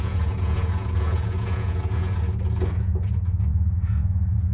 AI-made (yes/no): yes